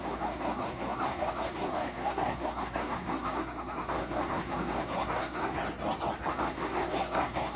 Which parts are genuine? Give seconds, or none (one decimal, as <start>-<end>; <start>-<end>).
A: 5.6-6.3